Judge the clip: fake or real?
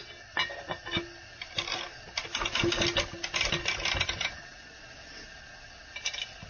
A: real